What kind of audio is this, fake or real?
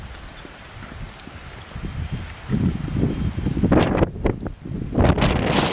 real